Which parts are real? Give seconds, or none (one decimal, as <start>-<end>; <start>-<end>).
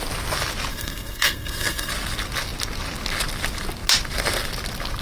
0.0-0.7; 1.9-5.0